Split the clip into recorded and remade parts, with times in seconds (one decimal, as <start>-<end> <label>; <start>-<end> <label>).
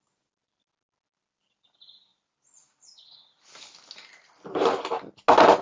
0.0-5.6 recorded